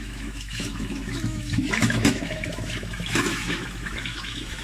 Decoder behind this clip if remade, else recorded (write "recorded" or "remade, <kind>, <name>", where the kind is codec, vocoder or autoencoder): remade, autoencoder, DAC-VAE